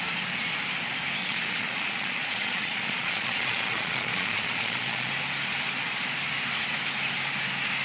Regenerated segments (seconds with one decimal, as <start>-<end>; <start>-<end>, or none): 1.2-5.1